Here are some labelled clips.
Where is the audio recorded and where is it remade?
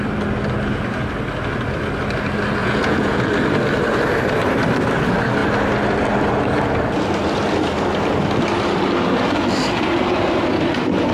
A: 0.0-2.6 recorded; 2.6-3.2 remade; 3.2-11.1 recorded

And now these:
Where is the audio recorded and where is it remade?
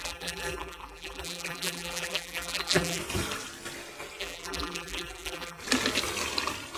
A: 0.0-3.0 remade; 3.0-4.2 recorded; 4.2-5.6 remade; 5.6-6.8 recorded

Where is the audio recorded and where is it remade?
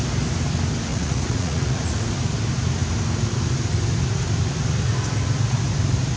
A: 0.0-0.9 recorded; 0.9-1.9 remade; 1.9-6.2 recorded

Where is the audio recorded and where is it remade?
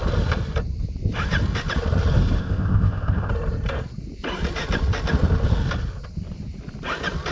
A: 0.0-2.4 recorded; 2.4-3.3 remade; 3.3-7.3 recorded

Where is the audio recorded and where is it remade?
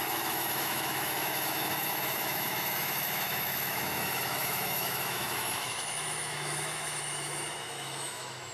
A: 0.0-8.5 remade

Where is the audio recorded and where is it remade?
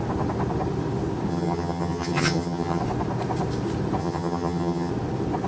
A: 0.0-1.3 recorded; 1.3-2.8 remade; 2.8-4.0 recorded; 4.0-4.9 remade; 4.9-5.5 recorded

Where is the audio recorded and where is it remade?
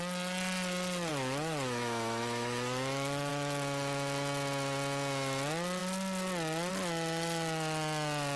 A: 0.0-1.1 recorded; 1.1-3.3 remade; 3.3-8.4 recorded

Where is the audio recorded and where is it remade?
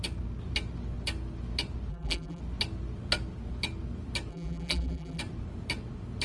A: 0.0-1.9 recorded; 1.9-2.4 remade; 2.4-4.3 recorded; 4.3-5.2 remade; 5.2-6.2 recorded